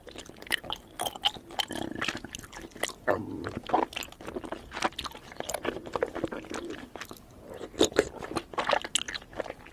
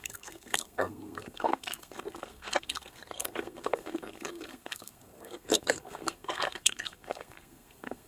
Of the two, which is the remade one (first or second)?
second